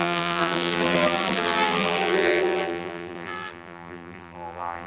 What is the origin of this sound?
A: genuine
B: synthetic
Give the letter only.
B